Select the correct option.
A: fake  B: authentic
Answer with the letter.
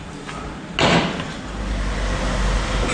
B